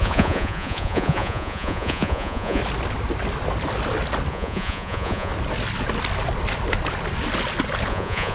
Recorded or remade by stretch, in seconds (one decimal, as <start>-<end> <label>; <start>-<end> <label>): 0.0-2.6 remade; 2.6-4.3 recorded; 4.3-5.3 remade; 5.3-7.9 recorded; 7.9-8.3 remade

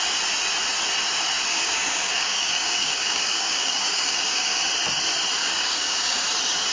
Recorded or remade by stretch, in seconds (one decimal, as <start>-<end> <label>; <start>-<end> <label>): 0.0-1.5 recorded; 1.5-4.7 remade; 4.7-5.4 recorded; 5.4-6.2 remade; 6.2-6.7 recorded

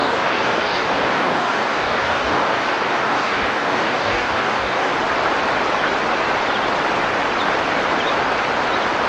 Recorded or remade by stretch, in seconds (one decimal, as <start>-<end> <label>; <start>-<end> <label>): 0.0-4.9 remade; 4.9-9.1 recorded

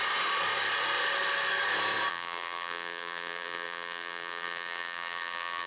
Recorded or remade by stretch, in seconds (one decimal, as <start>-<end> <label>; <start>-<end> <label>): 0.0-2.1 recorded; 2.1-5.7 remade